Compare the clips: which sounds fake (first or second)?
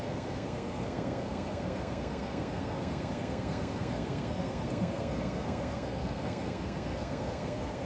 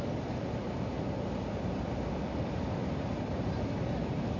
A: first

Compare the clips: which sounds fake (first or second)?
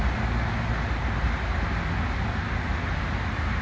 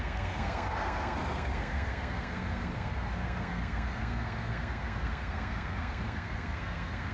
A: second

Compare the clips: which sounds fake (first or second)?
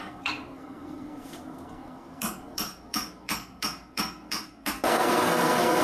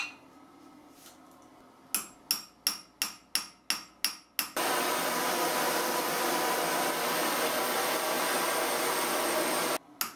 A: first